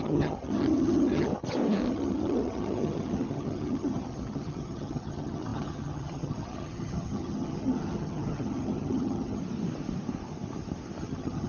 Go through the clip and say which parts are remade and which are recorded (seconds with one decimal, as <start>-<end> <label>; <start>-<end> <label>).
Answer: 0.0-1.3 remade; 1.3-1.9 recorded; 1.9-9.4 remade; 9.4-11.0 recorded; 11.0-11.5 remade